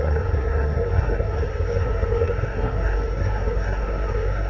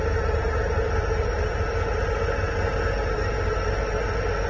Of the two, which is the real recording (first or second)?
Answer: second